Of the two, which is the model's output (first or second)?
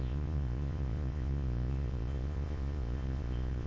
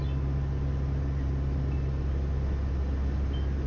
first